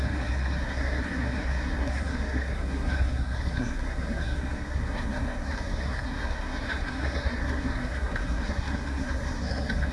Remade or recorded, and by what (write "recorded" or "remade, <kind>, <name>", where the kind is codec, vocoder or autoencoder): remade, codec, SNAC